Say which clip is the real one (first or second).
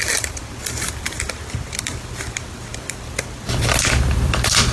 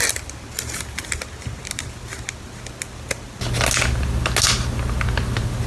second